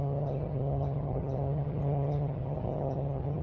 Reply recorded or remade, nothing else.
remade